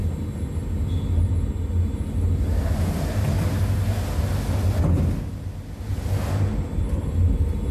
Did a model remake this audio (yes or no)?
no